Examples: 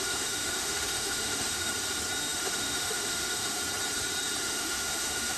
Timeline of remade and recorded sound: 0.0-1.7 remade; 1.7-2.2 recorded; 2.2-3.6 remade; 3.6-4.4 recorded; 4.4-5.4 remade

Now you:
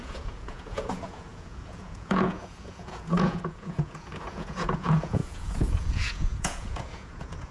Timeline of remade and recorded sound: 0.0-7.5 remade

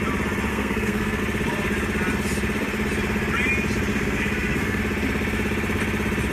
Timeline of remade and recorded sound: 0.0-0.5 recorded; 0.5-1.2 remade; 1.2-3.9 recorded; 3.9-4.8 remade; 4.8-6.3 recorded

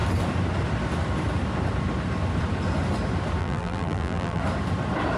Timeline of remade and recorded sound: 0.0-3.4 recorded; 3.4-4.4 remade; 4.4-5.2 recorded

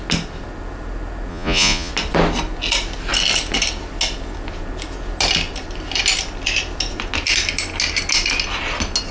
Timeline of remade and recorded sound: 0.0-1.3 recorded; 1.3-1.9 remade; 1.9-9.1 recorded

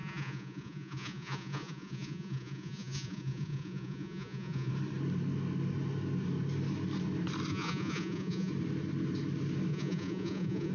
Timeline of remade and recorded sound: 0.0-4.7 remade; 4.7-7.5 recorded; 7.5-8.5 remade; 8.5-9.7 recorded; 9.7-10.7 remade

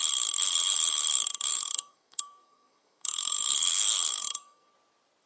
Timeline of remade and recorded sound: 0.0-1.5 recorded; 1.5-4.7 remade; 4.7-5.3 recorded